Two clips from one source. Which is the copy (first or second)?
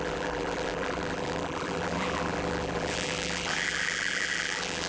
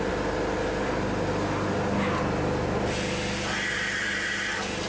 first